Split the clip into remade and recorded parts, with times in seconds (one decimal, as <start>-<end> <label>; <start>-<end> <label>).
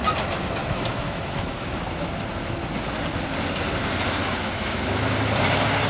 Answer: 0.0-0.6 recorded; 0.6-1.8 remade; 1.8-4.2 recorded; 4.2-5.1 remade; 5.1-5.9 recorded